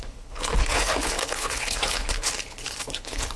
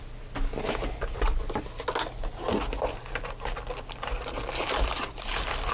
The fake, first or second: first